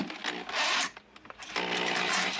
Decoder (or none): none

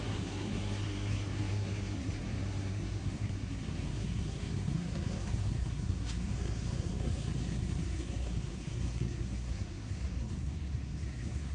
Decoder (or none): codec, SNAC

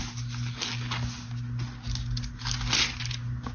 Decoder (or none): none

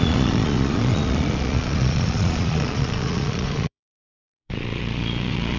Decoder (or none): vocoder, Vocos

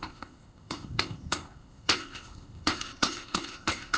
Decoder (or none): codec, ZipCodec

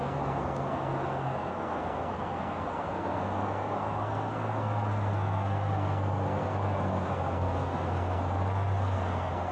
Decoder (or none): codec, SNAC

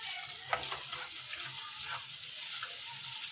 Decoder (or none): none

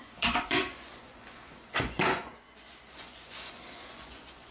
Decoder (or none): vocoder, Vocos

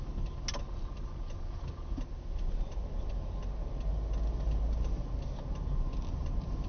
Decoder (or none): none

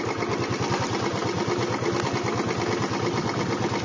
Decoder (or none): none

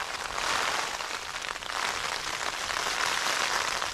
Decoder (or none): none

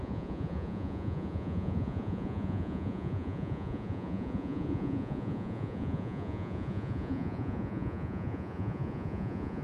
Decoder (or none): vocoder, Vocos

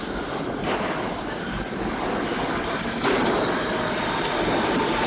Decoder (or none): none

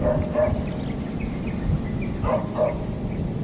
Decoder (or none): none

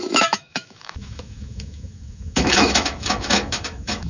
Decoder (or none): autoencoder, DAC-VAE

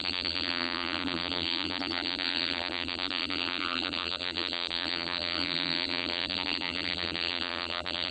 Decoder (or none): vocoder, BigVGAN v2